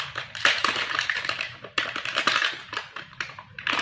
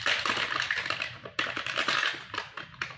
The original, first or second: second